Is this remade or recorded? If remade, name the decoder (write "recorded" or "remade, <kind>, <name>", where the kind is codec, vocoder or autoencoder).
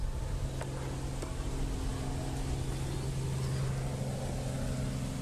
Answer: recorded